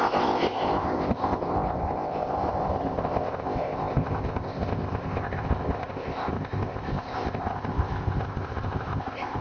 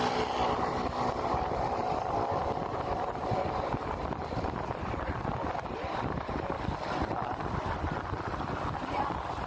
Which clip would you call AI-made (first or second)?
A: first